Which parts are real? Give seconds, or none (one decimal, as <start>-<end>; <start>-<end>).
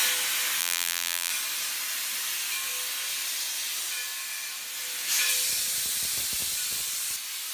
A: 0.0-0.6; 1.3-7.5